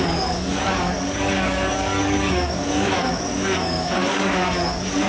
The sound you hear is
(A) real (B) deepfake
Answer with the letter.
B